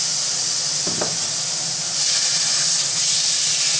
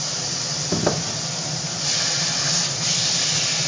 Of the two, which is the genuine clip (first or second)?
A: first